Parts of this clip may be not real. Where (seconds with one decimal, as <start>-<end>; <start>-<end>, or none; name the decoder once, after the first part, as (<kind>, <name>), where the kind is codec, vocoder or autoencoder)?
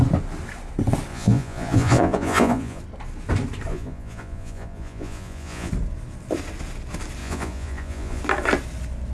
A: 1.1-2.8 (vocoder, Vocos); 3.7-5.7; 7.2-8.2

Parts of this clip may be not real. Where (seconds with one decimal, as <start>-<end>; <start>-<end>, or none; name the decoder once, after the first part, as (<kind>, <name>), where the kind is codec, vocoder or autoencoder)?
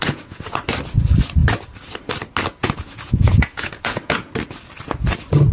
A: 0.0-0.6 (vocoder, Vocos); 2.6-4.3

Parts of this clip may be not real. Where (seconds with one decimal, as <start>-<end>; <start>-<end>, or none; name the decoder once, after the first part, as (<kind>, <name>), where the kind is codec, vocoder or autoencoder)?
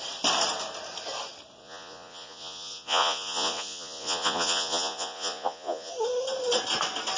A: 1.6-5.9 (vocoder, Vocos)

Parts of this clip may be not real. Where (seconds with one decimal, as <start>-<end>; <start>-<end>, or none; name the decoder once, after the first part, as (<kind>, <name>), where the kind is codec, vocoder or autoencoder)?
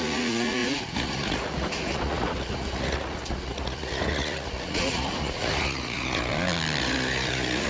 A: 0.0-6.3 (vocoder, Vocos); 6.8-7.7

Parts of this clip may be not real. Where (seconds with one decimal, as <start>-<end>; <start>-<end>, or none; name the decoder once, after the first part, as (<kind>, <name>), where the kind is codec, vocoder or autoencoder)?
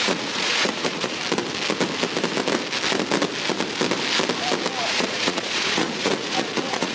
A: 0.0-1.2 (vocoder, Vocos); 4.8-6.9